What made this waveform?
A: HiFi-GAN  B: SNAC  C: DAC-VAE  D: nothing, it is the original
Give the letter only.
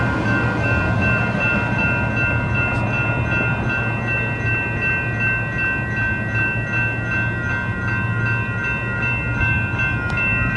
D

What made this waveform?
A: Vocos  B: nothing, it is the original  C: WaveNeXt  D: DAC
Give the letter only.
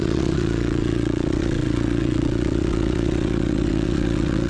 C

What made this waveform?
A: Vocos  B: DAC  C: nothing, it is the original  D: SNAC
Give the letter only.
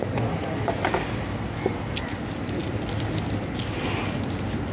C